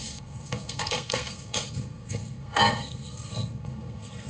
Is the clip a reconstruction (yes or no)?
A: yes